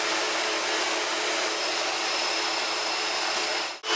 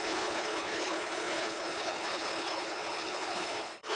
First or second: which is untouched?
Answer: first